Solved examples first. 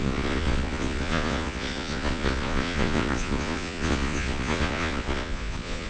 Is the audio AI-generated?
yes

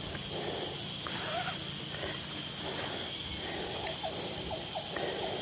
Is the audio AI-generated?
no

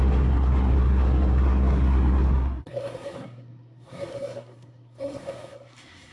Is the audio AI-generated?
yes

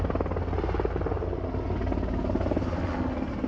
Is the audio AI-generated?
no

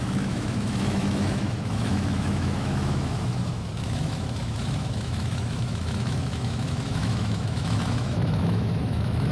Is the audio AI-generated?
yes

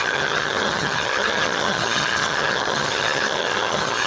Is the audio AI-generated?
yes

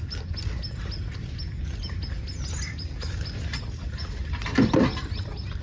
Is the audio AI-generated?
no